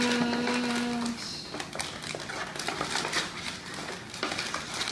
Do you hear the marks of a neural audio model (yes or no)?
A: no